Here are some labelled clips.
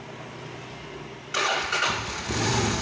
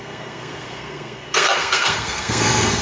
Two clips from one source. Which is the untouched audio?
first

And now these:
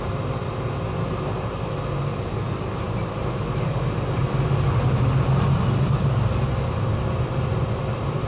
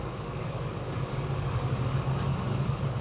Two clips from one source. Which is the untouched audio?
first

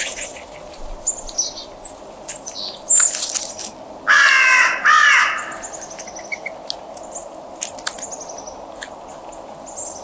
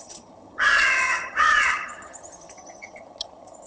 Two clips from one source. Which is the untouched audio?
first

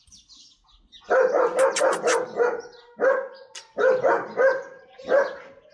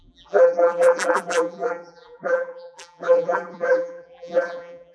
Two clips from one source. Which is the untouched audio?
first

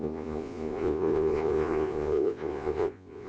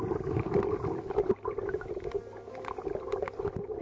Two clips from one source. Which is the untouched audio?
second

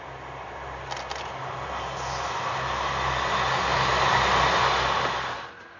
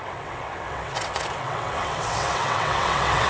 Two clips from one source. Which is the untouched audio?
first